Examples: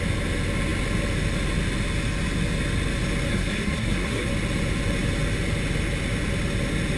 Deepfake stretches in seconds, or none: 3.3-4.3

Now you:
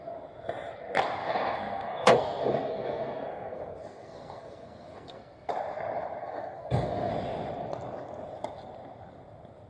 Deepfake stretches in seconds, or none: 1.2-5.5; 6.2-7.1

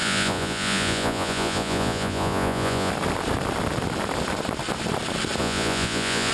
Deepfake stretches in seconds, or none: 0.0-2.9; 5.4-6.3

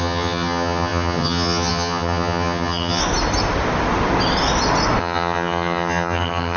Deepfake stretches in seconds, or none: 0.0-3.0; 5.0-6.6

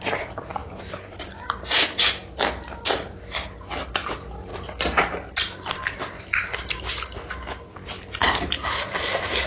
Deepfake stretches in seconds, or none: 0.6-1.3

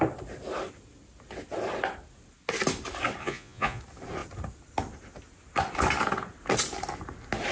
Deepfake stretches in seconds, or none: 3.2-3.8

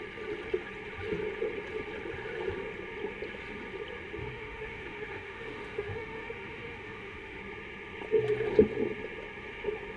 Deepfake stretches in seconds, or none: 4.2-7.4